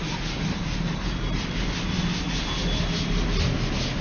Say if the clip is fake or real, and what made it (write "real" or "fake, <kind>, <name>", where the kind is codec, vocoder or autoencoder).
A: real